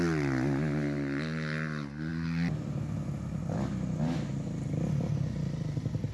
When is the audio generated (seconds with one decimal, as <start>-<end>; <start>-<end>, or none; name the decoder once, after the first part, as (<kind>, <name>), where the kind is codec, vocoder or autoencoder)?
none